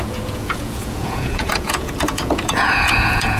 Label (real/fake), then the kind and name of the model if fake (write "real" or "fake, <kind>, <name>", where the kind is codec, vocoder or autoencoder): fake, vocoder, Vocos